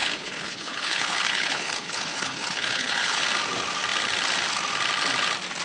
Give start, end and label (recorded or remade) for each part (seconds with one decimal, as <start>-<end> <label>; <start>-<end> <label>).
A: 0.0-3.2 remade; 3.2-5.6 recorded